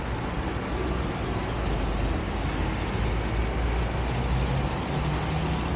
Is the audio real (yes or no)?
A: yes